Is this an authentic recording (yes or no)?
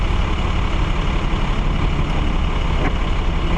yes